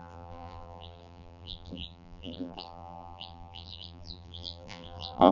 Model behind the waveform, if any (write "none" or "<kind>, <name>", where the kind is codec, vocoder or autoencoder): vocoder, BigVGAN v2